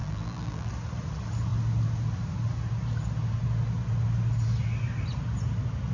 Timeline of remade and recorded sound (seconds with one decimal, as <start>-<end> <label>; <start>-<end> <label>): 0.0-0.7 remade; 0.7-5.9 recorded